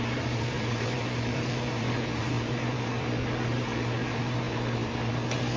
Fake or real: fake